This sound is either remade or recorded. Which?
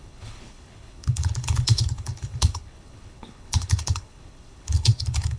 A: remade